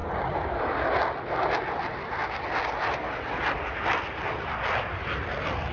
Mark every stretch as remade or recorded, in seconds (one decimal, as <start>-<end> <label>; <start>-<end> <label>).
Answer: 0.0-5.7 recorded